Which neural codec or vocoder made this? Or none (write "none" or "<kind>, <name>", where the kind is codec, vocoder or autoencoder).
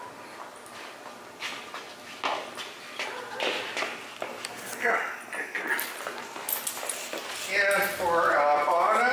none